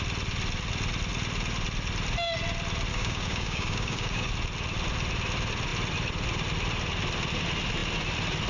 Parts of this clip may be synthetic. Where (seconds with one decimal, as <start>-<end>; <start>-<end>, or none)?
2.9-4.3